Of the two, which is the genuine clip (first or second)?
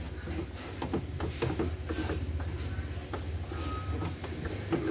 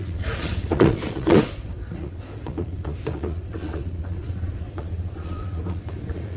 first